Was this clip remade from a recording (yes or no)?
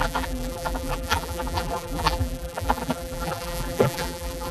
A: yes